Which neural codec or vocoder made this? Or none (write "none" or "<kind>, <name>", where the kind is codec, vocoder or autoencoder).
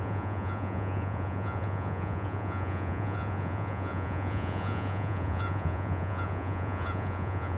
vocoder, Vocos